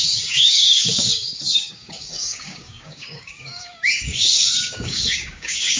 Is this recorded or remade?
remade